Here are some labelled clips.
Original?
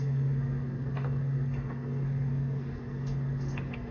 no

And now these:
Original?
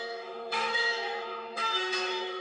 no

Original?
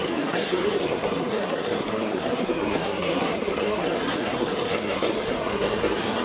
no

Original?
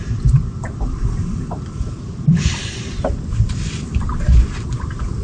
no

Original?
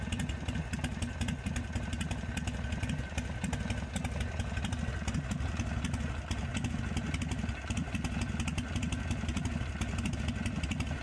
yes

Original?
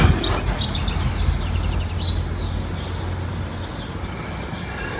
yes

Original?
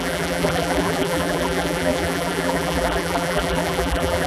no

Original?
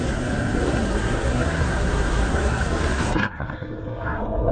no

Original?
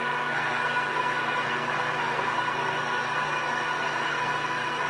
no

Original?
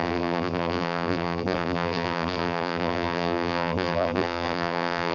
no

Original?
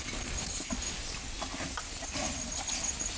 yes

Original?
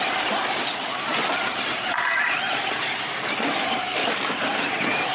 no